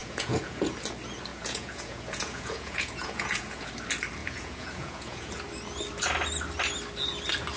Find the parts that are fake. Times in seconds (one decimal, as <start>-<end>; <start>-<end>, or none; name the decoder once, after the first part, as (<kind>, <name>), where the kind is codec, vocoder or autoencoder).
0.0-0.7 (vocoder, Vocos); 1.3-3.7; 4.2-5.3